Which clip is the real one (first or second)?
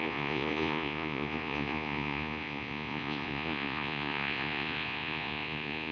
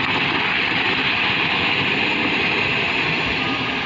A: second